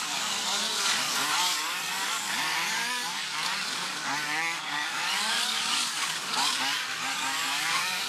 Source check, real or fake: fake